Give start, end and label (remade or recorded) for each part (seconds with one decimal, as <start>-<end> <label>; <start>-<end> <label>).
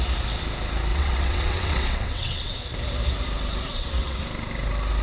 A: 0.0-0.9 recorded; 0.9-2.5 remade; 2.5-3.7 recorded; 3.7-4.2 remade; 4.2-5.0 recorded